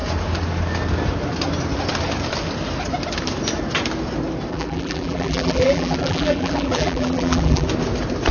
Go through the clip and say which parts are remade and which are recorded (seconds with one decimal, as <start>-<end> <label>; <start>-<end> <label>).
0.0-4.5 recorded; 4.5-7.7 remade; 7.7-8.3 recorded